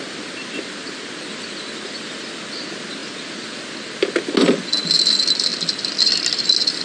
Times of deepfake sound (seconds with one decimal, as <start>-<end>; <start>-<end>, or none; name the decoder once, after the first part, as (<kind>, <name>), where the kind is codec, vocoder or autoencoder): none